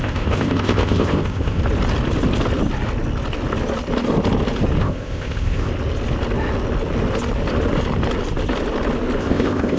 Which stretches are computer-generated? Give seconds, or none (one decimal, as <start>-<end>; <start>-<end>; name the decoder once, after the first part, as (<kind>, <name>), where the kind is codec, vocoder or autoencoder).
0.0-1.6 (codec, ZipCodec); 4.8-5.7; 9.2-9.8